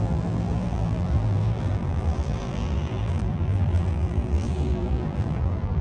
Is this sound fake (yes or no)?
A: yes